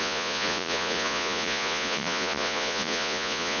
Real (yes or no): no